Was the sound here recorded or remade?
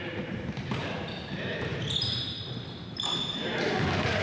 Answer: remade